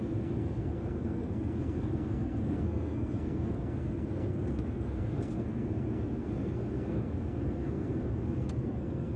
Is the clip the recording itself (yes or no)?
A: no